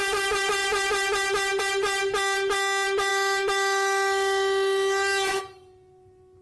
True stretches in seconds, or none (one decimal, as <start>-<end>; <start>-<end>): 0.0-3.1; 5.4-6.4